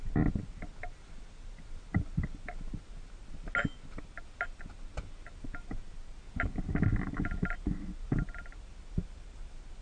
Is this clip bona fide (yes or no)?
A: yes